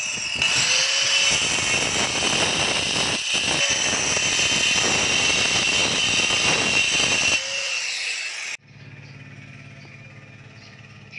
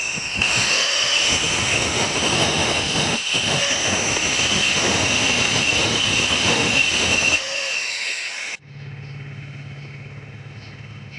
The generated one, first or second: second